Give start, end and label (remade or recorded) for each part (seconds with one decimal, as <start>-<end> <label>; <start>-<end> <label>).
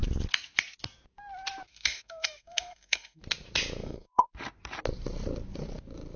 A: 0.0-1.7 recorded; 1.7-3.2 remade; 3.2-3.8 recorded; 3.8-4.3 remade; 4.3-6.2 recorded